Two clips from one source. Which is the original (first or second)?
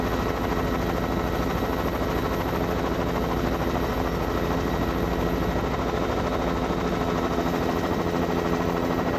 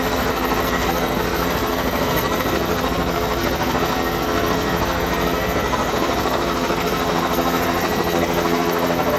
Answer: first